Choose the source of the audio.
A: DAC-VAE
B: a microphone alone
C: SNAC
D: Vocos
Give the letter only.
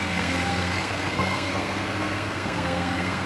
C